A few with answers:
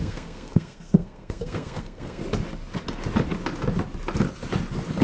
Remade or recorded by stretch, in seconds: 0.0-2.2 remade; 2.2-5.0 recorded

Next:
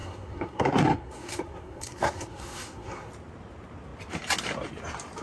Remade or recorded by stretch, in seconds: 0.0-3.1 remade; 3.1-5.2 recorded